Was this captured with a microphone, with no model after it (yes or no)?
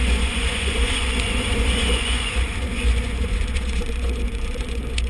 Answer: no